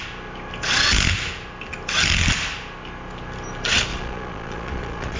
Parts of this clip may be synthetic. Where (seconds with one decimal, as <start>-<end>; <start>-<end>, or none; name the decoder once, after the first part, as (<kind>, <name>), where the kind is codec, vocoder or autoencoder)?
3.9-5.2 (vocoder, Vocos)